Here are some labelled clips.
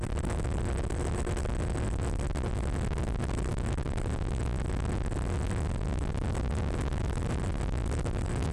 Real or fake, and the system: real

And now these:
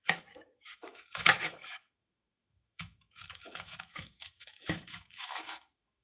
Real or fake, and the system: fake, autoencoder, DAC-VAE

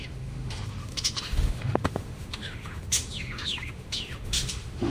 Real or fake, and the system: fake, autoencoder, DAC-VAE